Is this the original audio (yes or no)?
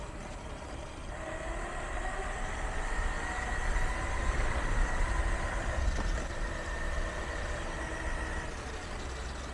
yes